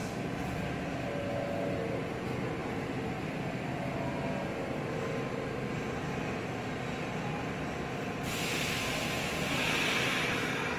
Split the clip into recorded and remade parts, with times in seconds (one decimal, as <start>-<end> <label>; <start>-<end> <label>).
0.0-10.8 recorded